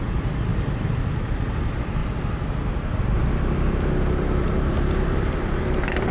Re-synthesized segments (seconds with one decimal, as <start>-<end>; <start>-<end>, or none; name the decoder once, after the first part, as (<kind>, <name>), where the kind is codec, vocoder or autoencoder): 0.0-0.5 (vocoder, BigVGAN v2); 1.0-2.0; 2.9-6.1